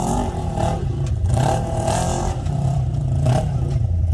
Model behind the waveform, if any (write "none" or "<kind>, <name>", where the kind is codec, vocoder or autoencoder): vocoder, BigVGAN v2